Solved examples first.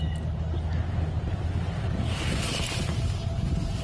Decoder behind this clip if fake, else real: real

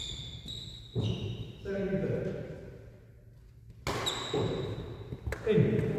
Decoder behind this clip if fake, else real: real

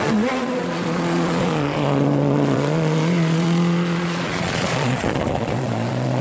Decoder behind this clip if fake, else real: fake, vocoder, Vocos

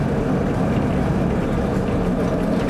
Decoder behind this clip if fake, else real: real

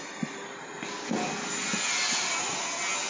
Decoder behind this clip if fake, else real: real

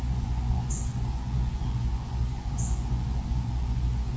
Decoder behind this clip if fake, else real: fake, vocoder, Vocos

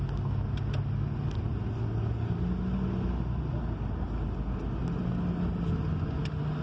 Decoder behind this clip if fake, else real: real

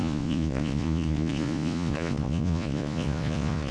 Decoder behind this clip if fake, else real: fake, vocoder, Vocos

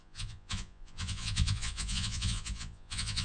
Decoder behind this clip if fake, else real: fake, vocoder, Vocos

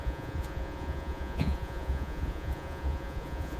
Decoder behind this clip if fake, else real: fake, vocoder, Vocos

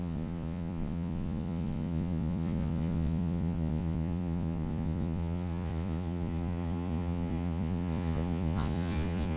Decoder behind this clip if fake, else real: fake, vocoder, Vocos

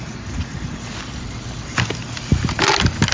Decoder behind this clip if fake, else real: real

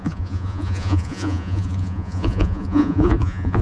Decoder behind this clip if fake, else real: fake, vocoder, Vocos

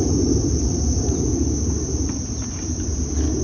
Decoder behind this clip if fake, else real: real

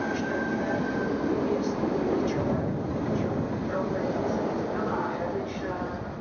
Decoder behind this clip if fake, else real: real